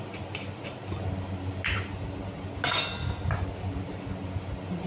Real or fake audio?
real